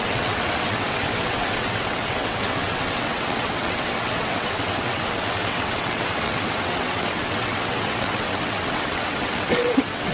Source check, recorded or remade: remade